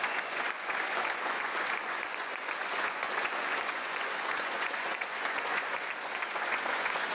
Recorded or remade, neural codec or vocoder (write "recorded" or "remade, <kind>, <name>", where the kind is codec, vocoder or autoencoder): remade, vocoder, Vocos